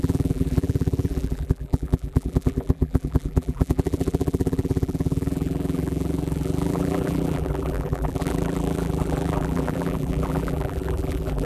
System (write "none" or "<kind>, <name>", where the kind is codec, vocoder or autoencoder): vocoder, BigVGAN v2